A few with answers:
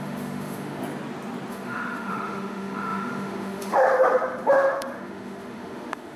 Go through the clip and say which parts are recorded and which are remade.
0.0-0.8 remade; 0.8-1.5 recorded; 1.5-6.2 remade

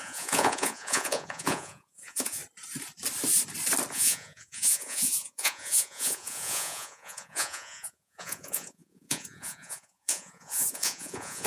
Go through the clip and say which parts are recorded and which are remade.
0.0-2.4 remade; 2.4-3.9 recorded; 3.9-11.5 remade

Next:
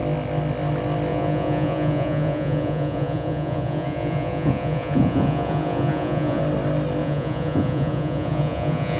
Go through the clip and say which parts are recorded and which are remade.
0.0-1.1 recorded; 1.1-6.4 remade; 6.4-7.0 recorded; 7.0-9.0 remade

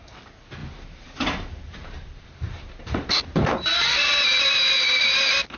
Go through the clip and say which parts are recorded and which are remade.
0.0-0.6 recorded; 0.6-4.0 remade; 4.0-5.6 recorded